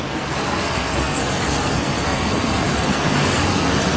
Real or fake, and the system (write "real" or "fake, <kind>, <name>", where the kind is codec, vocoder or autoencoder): fake, codec, SNAC